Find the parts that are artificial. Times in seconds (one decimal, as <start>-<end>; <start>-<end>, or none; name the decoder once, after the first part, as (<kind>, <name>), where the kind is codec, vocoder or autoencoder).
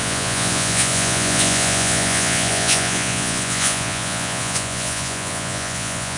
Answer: 0.0-6.2 (vocoder, Vocos)